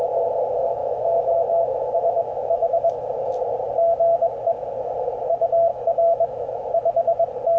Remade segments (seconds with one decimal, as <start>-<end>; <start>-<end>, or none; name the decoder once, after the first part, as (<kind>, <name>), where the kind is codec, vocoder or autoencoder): 0.8-2.9 (autoencoder, DAC-VAE); 5.7-6.7